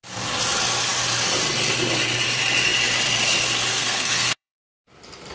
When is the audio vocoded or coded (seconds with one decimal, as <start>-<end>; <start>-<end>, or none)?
3.7-4.8